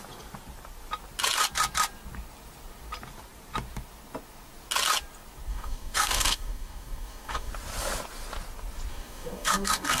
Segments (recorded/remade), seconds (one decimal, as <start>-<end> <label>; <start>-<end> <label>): 0.0-5.5 recorded; 5.5-7.5 remade; 7.5-8.9 recorded; 8.9-10.0 remade